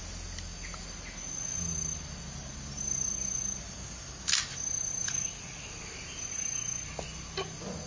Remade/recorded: recorded